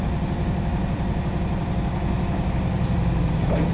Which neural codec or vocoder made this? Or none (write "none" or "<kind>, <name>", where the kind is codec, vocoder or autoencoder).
none